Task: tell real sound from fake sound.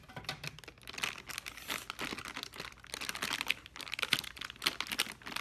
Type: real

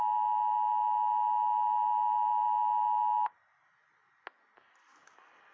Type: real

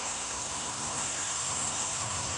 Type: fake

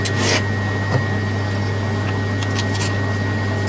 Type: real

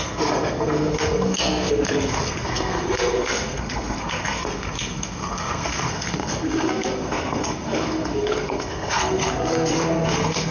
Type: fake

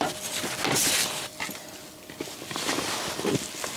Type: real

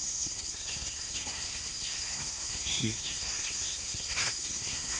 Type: fake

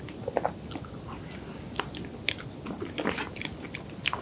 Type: real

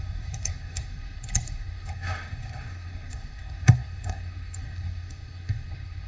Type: fake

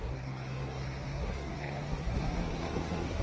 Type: fake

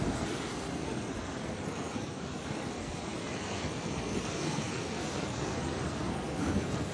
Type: fake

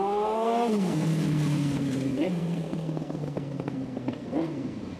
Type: fake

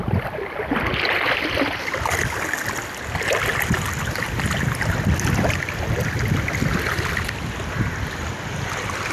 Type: real